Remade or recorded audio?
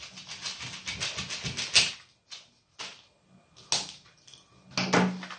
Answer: recorded